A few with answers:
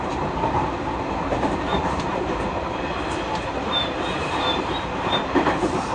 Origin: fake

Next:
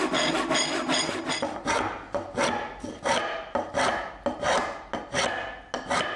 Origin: real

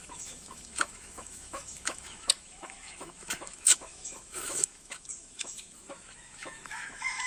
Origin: fake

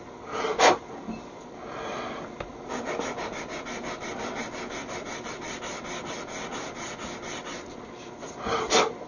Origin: real